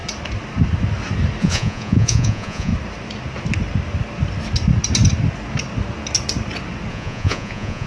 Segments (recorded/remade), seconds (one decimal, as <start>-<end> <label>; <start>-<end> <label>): 0.0-1.4 recorded; 1.4-2.7 remade; 2.7-6.9 recorded; 6.9-7.9 remade